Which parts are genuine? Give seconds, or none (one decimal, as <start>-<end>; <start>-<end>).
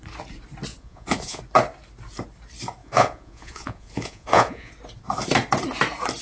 0.0-0.7; 1.4-2.8; 4.7-6.2